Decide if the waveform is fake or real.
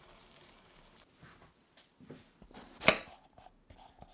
real